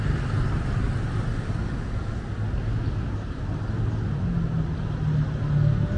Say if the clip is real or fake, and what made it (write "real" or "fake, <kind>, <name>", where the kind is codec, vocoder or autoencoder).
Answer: real